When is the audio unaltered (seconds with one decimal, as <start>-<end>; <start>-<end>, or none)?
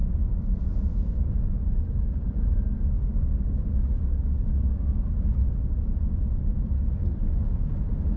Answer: 3.6-8.2